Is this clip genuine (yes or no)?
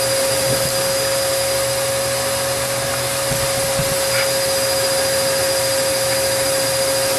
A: yes